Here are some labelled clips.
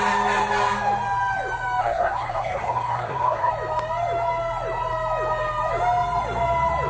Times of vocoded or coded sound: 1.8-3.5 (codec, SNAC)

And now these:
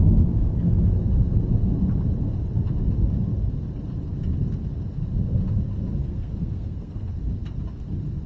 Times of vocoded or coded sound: 6.0-7.1 (codec, SNAC)

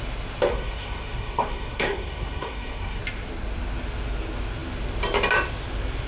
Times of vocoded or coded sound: 0.5-3.0 (codec, SNAC)

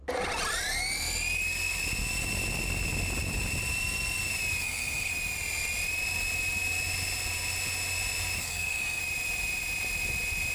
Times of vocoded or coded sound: 4.6-5.1 (codec, SNAC); 8.4-9.0

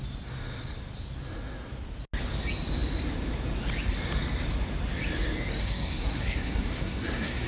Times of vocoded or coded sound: 5.6-7.5 (codec, SNAC)